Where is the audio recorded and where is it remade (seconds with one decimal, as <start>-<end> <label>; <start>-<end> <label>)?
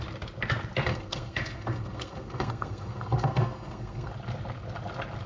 0.0-0.9 recorded; 0.9-4.1 remade; 4.1-5.3 recorded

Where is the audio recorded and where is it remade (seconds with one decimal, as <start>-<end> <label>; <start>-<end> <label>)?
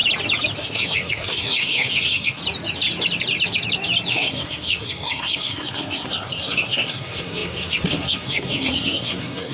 0.0-0.6 recorded; 0.6-2.4 remade; 2.4-4.1 recorded; 4.1-9.5 remade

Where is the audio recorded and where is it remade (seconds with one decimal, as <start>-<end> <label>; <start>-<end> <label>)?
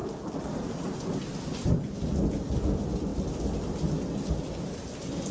0.0-5.3 recorded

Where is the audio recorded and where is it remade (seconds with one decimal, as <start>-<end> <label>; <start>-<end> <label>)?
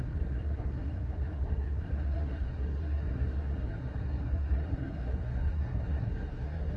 0.0-6.8 remade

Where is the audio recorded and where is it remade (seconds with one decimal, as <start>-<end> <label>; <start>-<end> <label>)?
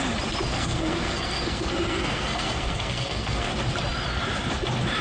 0.0-0.5 recorded; 0.5-3.5 remade; 3.5-5.0 recorded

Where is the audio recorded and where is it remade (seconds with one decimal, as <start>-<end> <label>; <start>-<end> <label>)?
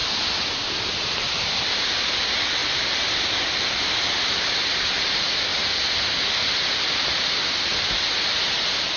0.0-9.0 recorded